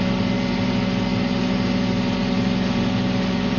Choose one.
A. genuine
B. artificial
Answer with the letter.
A